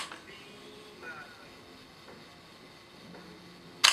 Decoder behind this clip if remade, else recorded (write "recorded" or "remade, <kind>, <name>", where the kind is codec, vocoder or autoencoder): recorded